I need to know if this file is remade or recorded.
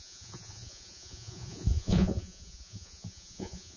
remade